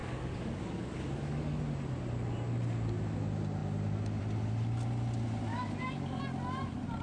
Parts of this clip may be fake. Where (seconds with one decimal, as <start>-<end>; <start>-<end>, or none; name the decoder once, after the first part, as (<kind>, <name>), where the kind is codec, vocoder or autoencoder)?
0.0-1.6 (codec, DAC); 5.5-6.2